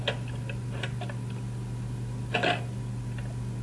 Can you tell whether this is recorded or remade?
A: recorded